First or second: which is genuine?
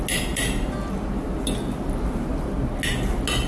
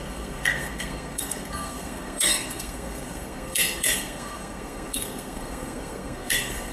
first